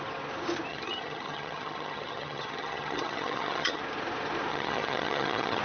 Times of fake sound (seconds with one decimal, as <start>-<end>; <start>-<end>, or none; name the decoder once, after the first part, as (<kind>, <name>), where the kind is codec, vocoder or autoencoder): 0.7-3.8 (vocoder, HiFi-GAN); 4.5-5.6